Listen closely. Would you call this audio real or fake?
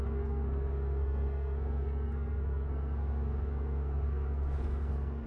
fake